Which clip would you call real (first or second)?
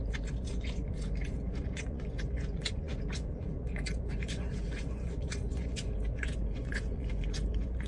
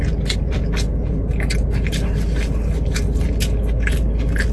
second